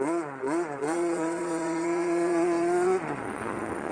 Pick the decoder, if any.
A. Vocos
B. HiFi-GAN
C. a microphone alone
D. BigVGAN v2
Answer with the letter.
A